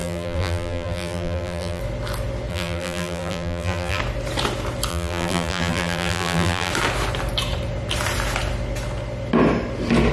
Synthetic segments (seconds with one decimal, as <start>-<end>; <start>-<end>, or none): 0.0-1.8; 2.5-4.0; 4.9-6.7